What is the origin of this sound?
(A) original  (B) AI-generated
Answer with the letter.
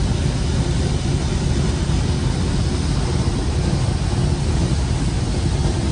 A